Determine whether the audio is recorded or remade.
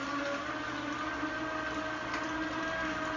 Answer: recorded